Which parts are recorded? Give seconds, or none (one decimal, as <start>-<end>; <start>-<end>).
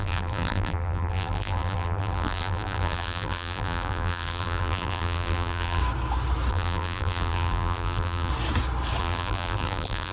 5.8-6.5; 8.3-9.0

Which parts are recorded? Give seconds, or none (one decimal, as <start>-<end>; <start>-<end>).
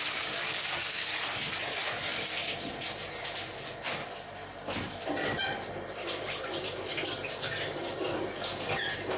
0.0-4.5; 7.9-9.2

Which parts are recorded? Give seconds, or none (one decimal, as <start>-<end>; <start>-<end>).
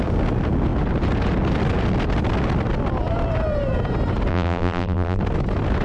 0.0-4.3; 5.2-5.8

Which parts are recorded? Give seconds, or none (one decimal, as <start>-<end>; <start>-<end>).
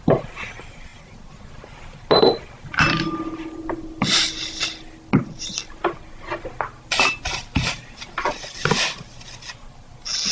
0.0-10.3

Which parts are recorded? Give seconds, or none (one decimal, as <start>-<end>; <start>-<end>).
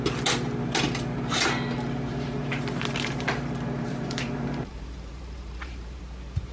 0.0-2.1; 6.0-6.5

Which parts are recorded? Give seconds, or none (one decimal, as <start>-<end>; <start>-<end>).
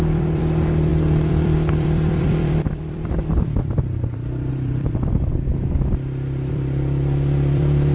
5.5-6.5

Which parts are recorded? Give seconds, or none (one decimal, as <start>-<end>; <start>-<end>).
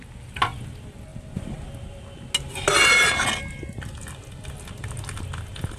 0.0-5.8